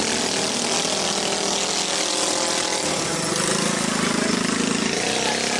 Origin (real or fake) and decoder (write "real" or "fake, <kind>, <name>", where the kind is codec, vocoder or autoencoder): real